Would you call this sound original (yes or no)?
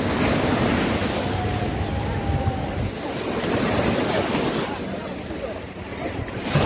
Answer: yes